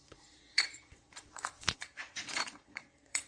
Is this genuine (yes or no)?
no